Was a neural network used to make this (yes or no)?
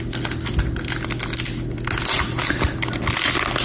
no